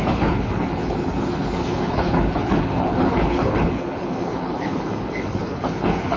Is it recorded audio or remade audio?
remade